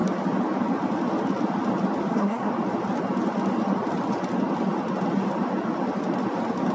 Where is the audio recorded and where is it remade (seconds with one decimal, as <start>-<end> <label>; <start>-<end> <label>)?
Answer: 0.0-2.0 recorded; 2.0-2.5 remade; 2.5-6.7 recorded